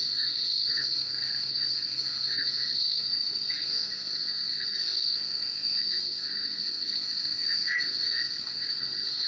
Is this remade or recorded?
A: remade